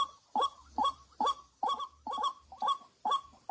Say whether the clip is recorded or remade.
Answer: recorded